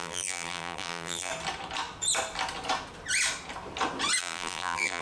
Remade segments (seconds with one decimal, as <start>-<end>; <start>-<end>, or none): 0.0-1.3; 4.2-5.0